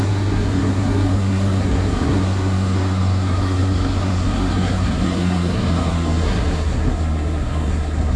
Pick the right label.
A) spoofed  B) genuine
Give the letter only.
A